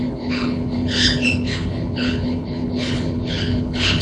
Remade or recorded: remade